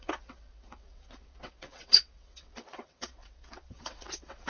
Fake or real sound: fake